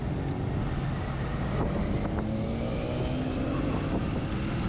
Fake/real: real